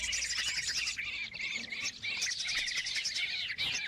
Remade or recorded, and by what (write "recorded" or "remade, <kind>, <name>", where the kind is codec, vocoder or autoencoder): recorded